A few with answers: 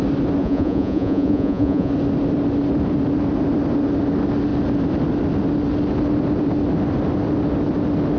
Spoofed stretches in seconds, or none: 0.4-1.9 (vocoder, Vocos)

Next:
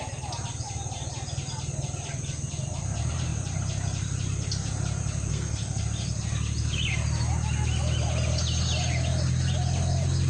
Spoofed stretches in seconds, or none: 5.3-5.8 (codec, SNAC)

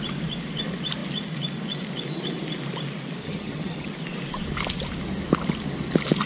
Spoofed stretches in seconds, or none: 3.2-3.9 (vocoder, HiFi-GAN)

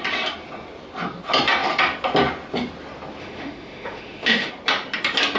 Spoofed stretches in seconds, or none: 3.2-4.5 (autoencoder, DAC-VAE)

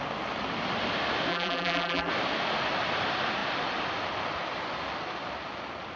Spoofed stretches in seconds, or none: 1.3-2.1 (vocoder, BigVGAN v2)

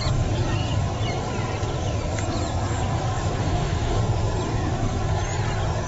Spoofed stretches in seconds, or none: 3.4-4.0 (codec, DAC)